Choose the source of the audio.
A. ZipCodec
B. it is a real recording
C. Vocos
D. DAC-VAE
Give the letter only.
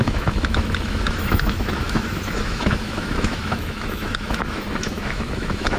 D